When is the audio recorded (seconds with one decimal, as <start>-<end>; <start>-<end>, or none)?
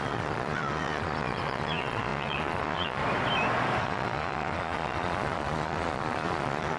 3.0-3.8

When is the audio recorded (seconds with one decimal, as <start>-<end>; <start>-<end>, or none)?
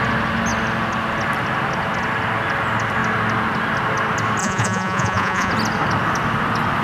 0.0-4.4; 5.5-6.8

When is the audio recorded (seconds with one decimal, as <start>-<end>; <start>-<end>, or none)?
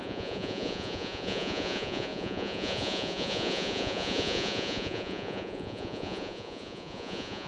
none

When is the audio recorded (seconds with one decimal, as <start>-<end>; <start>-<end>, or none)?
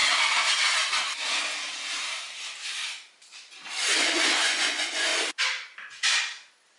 0.0-3.9; 5.1-6.8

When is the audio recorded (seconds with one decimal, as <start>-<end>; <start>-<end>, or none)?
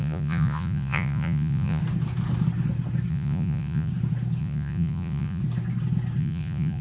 1.8-3.1; 3.9-4.4; 5.4-6.2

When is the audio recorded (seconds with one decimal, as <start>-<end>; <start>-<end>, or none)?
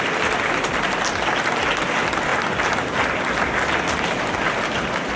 0.0-5.2